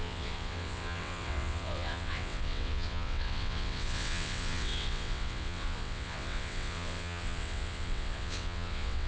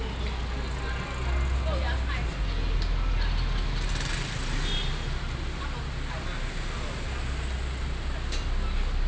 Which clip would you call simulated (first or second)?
first